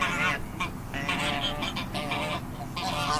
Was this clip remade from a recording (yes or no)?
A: no